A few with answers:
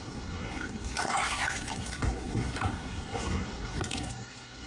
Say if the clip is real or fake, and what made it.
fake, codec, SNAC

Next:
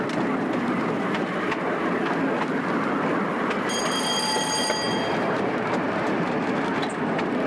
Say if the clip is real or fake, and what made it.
real